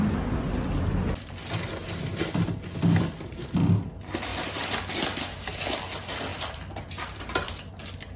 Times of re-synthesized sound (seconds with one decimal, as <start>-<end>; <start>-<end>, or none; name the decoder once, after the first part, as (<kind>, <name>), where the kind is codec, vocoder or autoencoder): 4.3-4.8 (vocoder, BigVGAN v2); 6.3-7.7